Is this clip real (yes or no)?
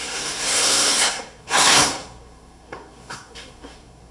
no